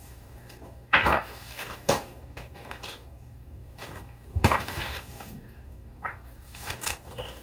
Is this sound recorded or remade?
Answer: remade